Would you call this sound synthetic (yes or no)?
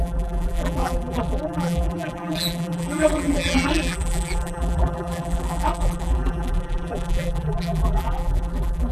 yes